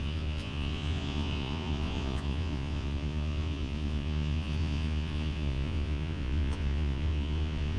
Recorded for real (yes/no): no